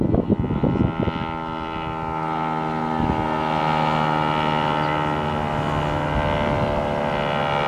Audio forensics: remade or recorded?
recorded